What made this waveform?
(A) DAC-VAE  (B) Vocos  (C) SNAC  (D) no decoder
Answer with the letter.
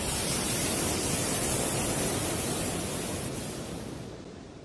D